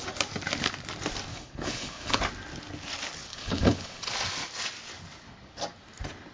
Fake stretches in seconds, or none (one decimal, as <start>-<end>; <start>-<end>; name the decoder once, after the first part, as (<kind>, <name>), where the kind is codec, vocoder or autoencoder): 1.3-2.2 (codec, HILCodec); 3.3-4.1